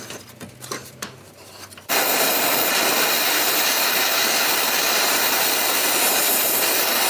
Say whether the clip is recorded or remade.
recorded